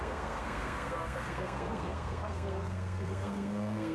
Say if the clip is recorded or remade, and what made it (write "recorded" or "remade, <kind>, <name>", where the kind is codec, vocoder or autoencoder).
remade, codec, SNAC